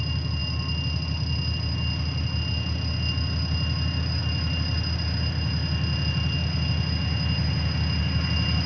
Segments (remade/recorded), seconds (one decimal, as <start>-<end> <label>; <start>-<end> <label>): 0.0-8.7 recorded